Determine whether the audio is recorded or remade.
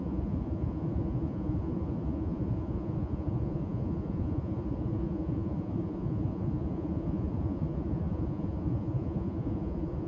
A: remade